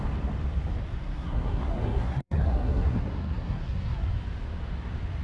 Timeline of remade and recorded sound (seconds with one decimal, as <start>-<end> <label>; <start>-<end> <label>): 0.0-1.0 recorded; 1.0-4.1 remade; 4.1-5.2 recorded